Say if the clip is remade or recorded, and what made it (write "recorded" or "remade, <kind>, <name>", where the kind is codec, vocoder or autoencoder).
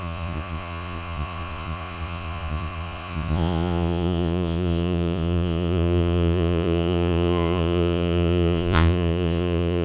remade, vocoder, Vocos